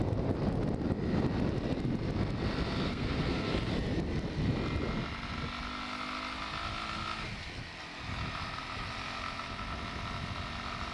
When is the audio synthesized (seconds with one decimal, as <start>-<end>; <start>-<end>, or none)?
2.9-3.5